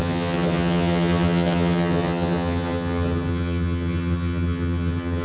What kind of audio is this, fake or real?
fake